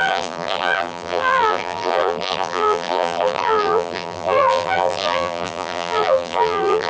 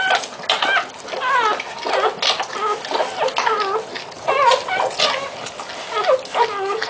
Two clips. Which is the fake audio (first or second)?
first